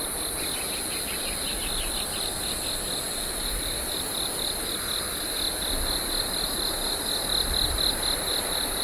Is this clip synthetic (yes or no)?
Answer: no